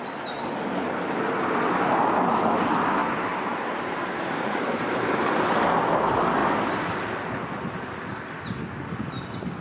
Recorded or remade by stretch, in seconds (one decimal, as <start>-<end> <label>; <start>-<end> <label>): 0.0-3.0 recorded; 3.0-5.5 remade; 5.5-6.4 recorded; 6.4-7.1 remade; 7.1-9.6 recorded